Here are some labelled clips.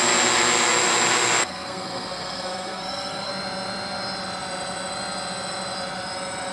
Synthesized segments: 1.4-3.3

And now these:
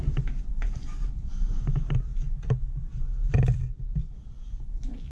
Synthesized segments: none

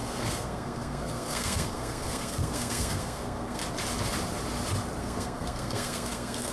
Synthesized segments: 0.0-3.6; 5.0-6.5

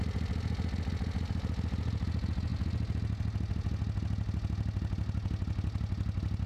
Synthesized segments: none